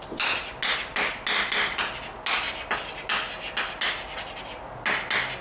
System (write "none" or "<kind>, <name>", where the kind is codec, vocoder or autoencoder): none